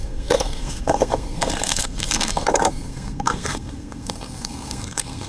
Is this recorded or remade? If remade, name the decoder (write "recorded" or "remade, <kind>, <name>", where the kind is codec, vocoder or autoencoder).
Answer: remade, codec, SNAC